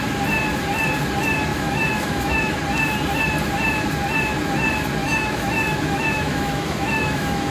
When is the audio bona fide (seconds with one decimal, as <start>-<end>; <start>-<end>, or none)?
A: 0.0-1.5; 2.5-5.0